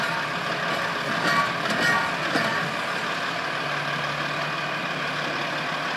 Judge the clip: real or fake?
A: real